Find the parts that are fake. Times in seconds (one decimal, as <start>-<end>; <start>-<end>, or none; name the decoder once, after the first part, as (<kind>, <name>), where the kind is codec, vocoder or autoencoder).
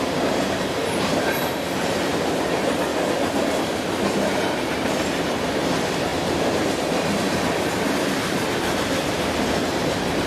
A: 0.0-2.9 (vocoder, BigVGAN v2); 3.5-10.3